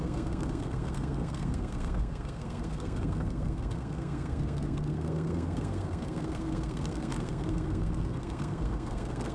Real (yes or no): no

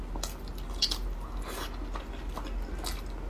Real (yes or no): yes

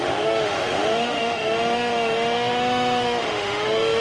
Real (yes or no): no